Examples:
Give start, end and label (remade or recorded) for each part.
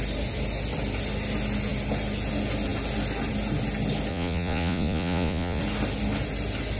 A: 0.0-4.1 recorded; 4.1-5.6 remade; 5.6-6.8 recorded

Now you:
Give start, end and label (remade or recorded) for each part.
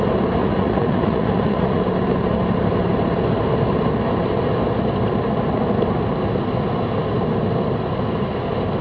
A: 0.0-0.4 recorded; 0.4-1.8 remade; 1.8-8.8 recorded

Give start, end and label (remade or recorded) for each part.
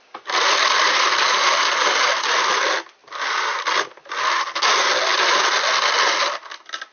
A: 0.0-6.9 recorded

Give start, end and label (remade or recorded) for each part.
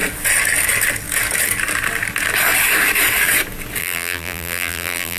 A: 0.0-3.8 recorded; 3.8-5.2 remade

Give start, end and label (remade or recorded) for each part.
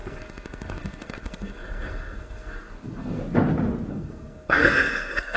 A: 0.0-3.2 remade; 3.2-3.9 recorded; 3.9-5.4 remade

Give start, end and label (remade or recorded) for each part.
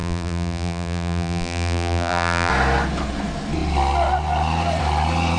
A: 0.0-2.5 remade; 2.5-5.4 recorded